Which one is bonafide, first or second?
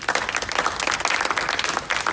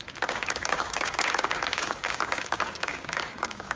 first